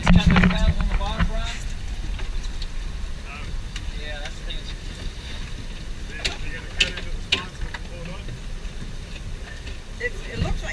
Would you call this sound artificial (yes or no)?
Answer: no